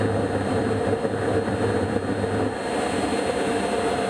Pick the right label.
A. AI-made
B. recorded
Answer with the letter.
B